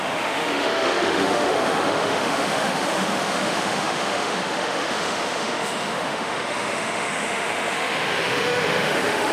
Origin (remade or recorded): remade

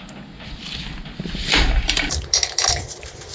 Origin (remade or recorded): recorded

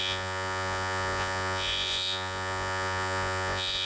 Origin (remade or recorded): remade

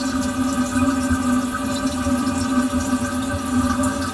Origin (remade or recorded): recorded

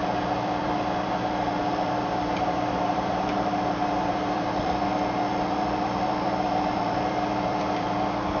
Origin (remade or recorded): remade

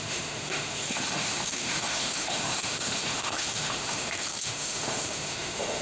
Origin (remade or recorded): remade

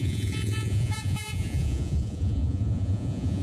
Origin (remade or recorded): remade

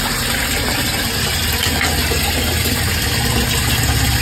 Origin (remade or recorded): recorded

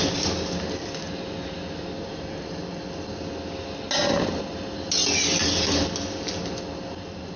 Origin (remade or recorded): recorded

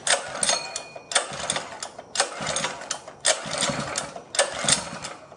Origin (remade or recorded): recorded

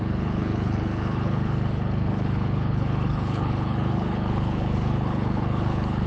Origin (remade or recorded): remade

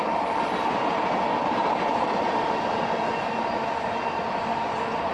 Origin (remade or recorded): recorded